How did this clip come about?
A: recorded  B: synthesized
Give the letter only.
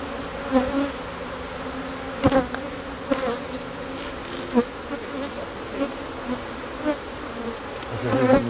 A